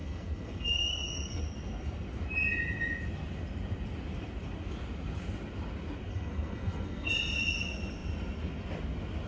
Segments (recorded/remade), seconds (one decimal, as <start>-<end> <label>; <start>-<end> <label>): 0.0-1.4 remade; 1.4-6.1 recorded; 6.1-7.1 remade; 7.1-9.3 recorded